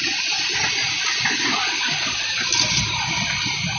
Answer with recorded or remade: recorded